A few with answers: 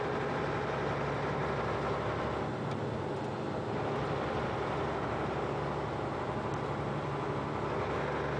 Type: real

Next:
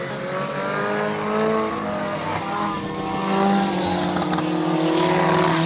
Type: real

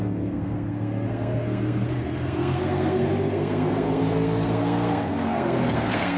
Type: fake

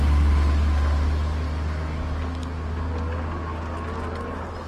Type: real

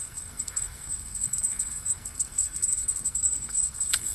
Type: fake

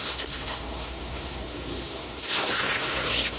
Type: fake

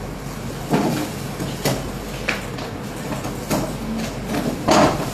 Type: real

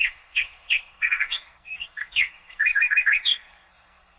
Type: fake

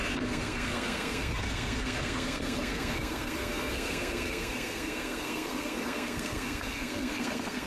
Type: fake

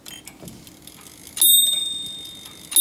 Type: real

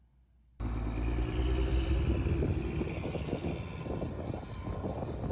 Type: real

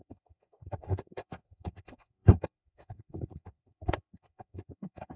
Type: fake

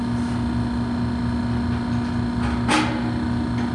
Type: real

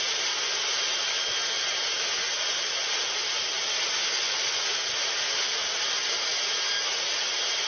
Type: real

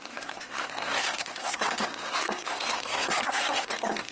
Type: fake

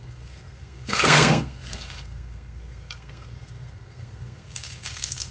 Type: fake